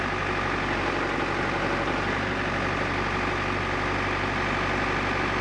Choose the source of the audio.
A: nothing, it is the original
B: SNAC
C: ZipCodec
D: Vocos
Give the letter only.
A